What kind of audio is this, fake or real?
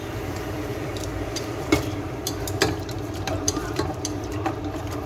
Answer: fake